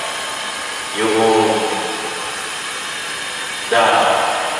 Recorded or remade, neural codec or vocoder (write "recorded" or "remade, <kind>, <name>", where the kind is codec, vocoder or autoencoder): recorded